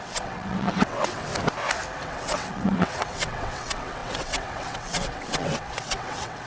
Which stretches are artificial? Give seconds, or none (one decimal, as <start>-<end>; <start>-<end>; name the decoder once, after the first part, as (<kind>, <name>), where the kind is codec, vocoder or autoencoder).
0.0-1.3 (vocoder, WaveNeXt); 2.0-6.5